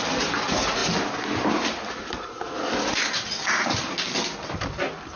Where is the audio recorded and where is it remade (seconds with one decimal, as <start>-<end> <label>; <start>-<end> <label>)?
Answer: 0.0-5.2 recorded